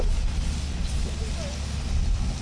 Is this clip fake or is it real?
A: real